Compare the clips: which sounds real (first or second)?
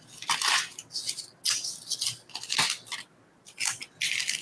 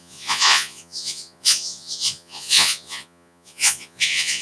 first